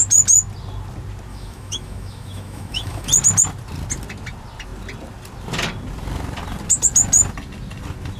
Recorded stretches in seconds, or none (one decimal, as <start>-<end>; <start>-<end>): 0.0-1.3; 3.1-8.2